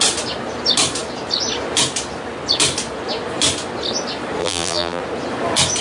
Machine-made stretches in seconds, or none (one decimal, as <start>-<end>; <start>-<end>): 4.4-5.0